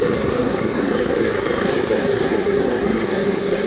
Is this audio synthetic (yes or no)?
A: yes